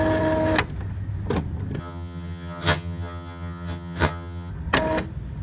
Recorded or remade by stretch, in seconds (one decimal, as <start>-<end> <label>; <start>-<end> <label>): 0.0-1.8 recorded; 1.8-4.5 remade; 4.5-5.4 recorded